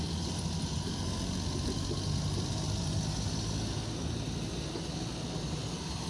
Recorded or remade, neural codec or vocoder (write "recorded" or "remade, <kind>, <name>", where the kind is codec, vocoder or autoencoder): recorded